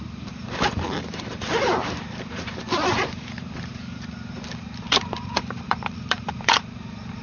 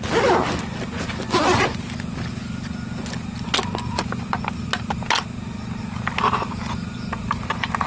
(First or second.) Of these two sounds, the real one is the second